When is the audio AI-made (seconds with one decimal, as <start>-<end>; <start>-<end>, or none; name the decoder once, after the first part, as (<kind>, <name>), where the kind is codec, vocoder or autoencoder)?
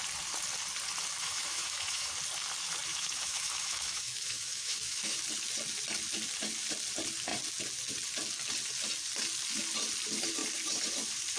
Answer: 1.2-2.1 (autoencoder, DAC-VAE); 2.9-5.2